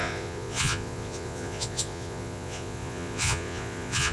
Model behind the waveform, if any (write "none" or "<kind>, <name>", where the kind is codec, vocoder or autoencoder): vocoder, Vocos